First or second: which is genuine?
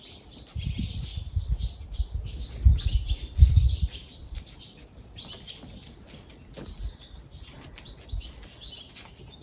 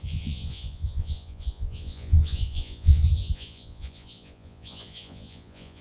first